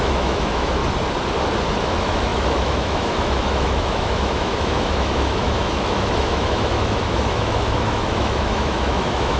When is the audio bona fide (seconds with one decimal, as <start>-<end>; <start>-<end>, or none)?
0.8-1.8